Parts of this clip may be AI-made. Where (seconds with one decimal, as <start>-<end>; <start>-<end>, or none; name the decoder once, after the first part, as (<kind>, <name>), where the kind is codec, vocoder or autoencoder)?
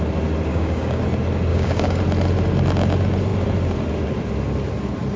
0.5-1.0 (codec, DAC); 1.5-2.0